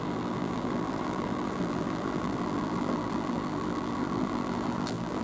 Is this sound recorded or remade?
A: remade